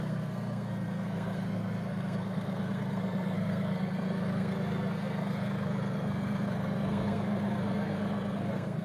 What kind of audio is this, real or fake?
fake